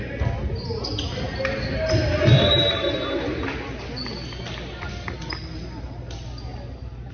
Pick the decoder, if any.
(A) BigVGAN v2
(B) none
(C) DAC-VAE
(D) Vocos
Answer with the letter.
B